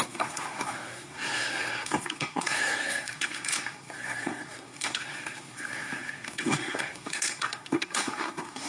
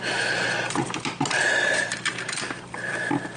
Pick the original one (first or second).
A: second